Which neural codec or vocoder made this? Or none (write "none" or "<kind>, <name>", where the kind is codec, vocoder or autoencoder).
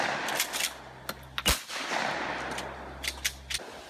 none